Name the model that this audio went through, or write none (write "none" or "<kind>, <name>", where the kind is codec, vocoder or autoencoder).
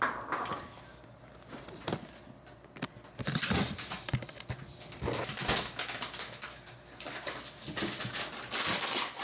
none